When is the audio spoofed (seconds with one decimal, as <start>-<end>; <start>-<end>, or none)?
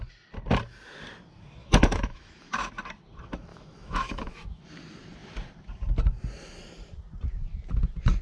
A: 1.6-2.7; 3.5-4.6